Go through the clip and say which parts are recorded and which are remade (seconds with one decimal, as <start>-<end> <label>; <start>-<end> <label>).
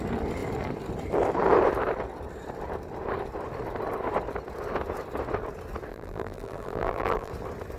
0.0-5.9 recorded; 5.9-7.3 remade; 7.3-7.8 recorded